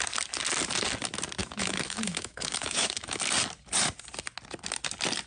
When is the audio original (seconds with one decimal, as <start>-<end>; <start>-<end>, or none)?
0.0-1.4; 3.2-5.3